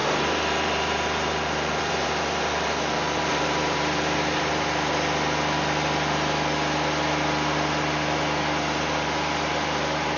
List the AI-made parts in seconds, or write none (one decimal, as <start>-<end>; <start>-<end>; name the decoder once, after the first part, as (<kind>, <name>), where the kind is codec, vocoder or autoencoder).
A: 0.0-4.5 (vocoder, BigVGAN v2)